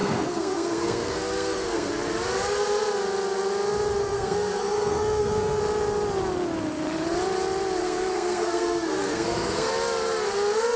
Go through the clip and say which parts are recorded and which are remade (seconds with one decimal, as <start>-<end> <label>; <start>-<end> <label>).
0.0-1.9 remade; 1.9-4.0 recorded; 4.0-5.6 remade; 5.6-7.8 recorded; 7.8-9.7 remade; 9.7-10.8 recorded